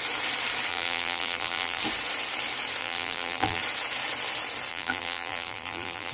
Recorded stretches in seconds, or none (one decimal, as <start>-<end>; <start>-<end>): 0.0-0.7; 1.8-2.8; 3.6-4.7